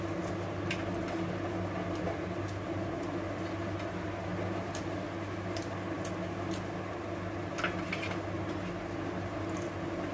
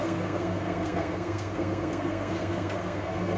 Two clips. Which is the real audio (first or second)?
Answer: first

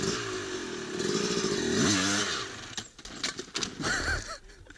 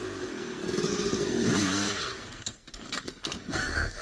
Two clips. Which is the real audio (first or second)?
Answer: first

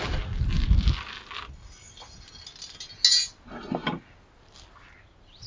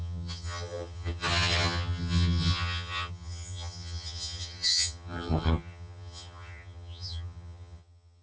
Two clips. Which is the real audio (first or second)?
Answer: first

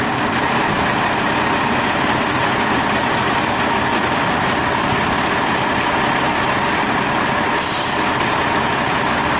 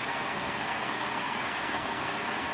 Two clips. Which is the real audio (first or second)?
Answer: first